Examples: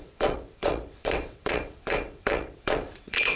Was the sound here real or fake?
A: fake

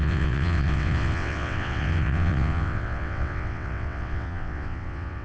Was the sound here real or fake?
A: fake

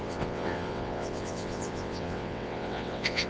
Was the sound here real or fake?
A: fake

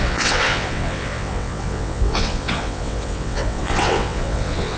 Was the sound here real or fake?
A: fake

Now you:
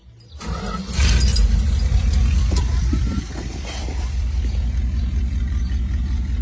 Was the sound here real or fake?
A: real